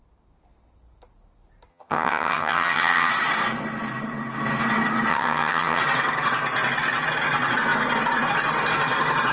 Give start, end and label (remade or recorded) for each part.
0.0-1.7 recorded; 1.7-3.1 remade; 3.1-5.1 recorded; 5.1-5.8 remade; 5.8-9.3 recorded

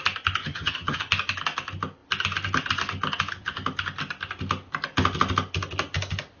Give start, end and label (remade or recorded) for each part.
0.0-0.4 recorded; 0.4-1.1 remade; 1.1-6.4 recorded

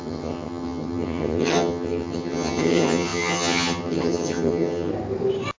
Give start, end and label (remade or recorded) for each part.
0.0-4.9 remade; 4.9-5.6 recorded

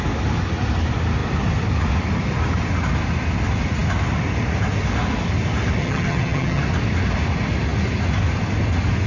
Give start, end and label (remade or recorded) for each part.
0.0-5.8 recorded; 5.8-6.6 remade; 6.6-9.1 recorded

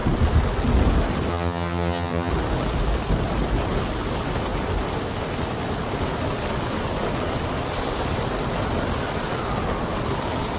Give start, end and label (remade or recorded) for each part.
0.0-1.3 recorded; 1.3-2.3 remade; 2.3-10.6 recorded